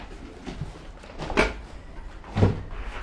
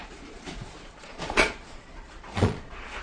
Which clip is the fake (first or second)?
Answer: second